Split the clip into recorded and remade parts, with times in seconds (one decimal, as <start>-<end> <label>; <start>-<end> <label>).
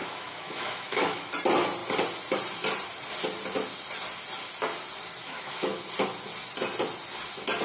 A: 0.0-1.3 remade; 1.3-5.2 recorded; 5.2-5.8 remade; 5.8-7.6 recorded